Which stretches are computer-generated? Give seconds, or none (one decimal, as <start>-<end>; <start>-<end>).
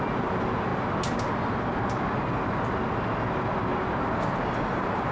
none